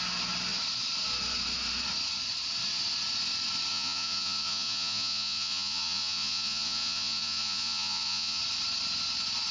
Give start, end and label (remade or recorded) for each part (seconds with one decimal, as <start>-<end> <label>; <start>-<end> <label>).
0.0-3.7 recorded; 3.7-8.4 remade; 8.4-9.5 recorded